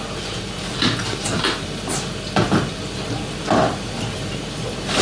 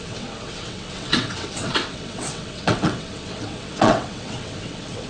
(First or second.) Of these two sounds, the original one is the first